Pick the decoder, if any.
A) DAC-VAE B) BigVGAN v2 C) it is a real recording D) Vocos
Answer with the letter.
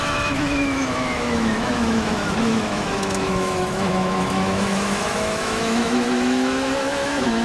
A